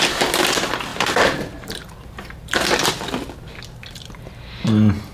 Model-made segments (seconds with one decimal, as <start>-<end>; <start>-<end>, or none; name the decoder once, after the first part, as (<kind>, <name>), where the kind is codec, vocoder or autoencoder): 0.9-2.9 (vocoder, BigVGAN v2)